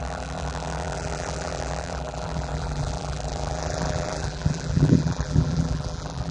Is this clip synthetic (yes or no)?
yes